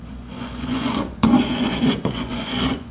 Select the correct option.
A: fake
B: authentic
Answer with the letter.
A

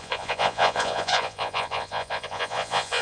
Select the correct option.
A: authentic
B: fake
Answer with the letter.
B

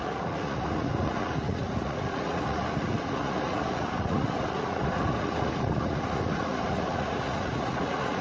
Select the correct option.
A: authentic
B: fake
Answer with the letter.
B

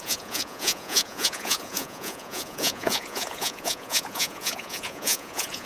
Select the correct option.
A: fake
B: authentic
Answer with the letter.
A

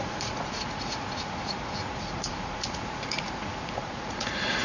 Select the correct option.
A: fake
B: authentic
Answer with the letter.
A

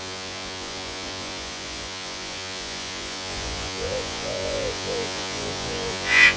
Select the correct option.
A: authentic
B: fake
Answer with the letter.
B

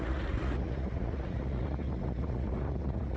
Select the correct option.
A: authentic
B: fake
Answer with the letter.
B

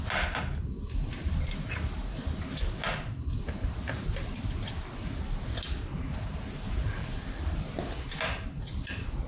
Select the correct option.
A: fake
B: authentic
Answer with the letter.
B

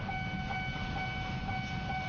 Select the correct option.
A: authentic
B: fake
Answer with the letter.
A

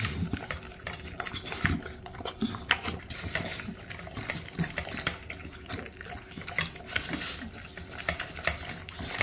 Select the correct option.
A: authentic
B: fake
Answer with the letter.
A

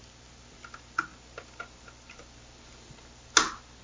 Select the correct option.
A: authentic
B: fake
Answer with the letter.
A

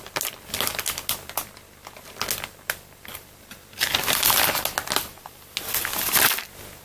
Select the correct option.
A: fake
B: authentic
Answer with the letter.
B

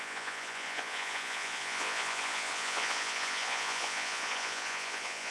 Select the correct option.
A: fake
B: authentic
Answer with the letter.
A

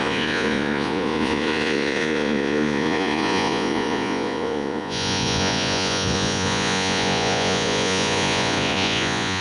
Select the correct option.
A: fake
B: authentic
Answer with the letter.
A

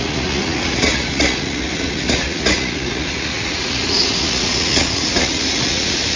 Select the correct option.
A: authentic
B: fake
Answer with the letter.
B